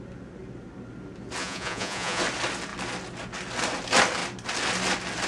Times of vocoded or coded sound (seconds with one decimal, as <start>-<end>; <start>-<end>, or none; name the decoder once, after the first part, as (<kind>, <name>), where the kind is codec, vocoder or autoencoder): 1.4-2.2 (vocoder, Vocos)

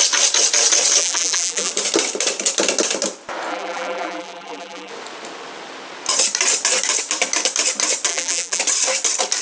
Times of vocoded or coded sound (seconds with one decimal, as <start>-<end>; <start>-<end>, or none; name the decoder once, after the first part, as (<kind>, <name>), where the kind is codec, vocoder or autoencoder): 1.0-1.7 (vocoder, BigVGAN v2); 3.5-4.9; 8.1-8.6